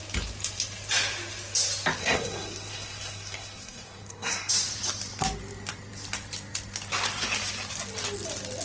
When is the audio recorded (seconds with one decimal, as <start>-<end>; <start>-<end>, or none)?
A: 0.0-2.0; 4.5-8.6